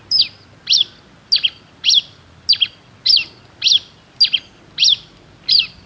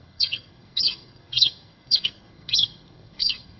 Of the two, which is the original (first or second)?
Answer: first